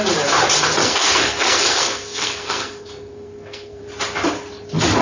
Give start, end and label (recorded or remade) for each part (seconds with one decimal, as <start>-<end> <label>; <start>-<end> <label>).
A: 0.0-0.8 recorded; 0.8-3.8 remade; 3.8-5.0 recorded